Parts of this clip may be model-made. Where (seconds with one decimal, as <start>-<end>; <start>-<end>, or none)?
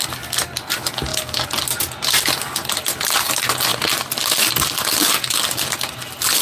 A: none